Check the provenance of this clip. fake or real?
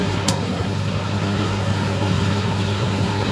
fake